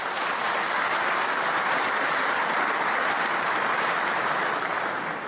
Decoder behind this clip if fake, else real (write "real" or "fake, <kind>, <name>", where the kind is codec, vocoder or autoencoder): real